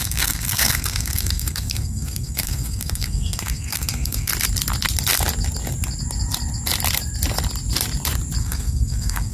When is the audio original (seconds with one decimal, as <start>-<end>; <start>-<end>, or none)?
4.3-8.4